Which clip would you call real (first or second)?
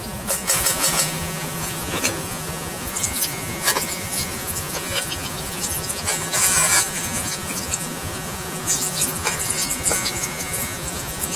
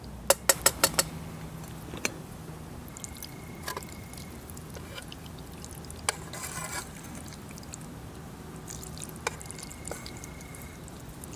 second